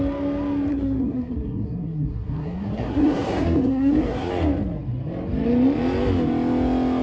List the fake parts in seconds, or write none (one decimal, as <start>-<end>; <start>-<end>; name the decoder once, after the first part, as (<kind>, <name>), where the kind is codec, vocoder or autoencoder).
0.7-4.3 (codec, SNAC)

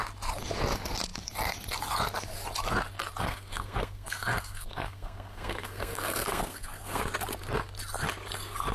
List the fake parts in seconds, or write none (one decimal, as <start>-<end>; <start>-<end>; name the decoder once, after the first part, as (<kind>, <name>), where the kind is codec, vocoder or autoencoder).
3.2-7.0 (codec, SNAC)

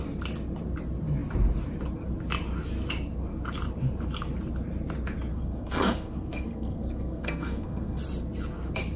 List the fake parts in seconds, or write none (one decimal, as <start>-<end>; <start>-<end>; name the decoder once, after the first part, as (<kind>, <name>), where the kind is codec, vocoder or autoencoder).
5.3-8.0 (codec, SNAC)